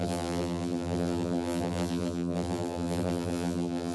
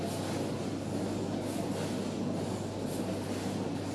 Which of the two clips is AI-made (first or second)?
first